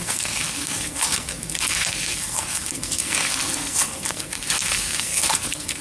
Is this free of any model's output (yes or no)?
no